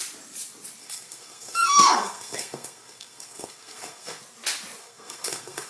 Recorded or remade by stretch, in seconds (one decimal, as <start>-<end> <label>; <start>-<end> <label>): 0.0-0.8 recorded; 0.8-4.2 remade; 4.2-4.8 recorded; 4.8-5.7 remade